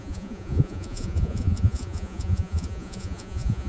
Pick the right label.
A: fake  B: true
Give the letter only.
A